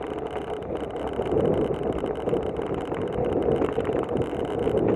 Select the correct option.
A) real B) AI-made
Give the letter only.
A